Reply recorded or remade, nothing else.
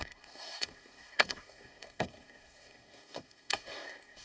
remade